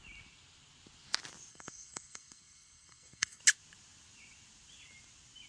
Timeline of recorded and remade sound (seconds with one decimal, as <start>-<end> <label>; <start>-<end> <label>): 0.0-1.5 recorded; 1.5-3.4 remade; 3.4-5.5 recorded